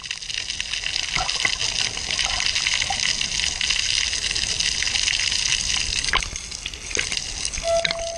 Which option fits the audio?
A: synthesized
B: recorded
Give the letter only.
B